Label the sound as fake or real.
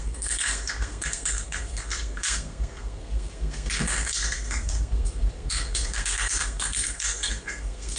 fake